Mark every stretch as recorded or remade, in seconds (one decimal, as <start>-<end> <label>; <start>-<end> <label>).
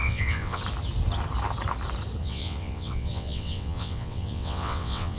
0.0-0.6 remade; 0.6-2.2 recorded; 2.2-5.2 remade